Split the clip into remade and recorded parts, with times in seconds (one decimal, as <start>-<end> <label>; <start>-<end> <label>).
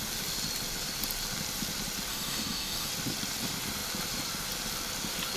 0.0-2.1 recorded; 2.1-2.9 remade; 2.9-5.4 recorded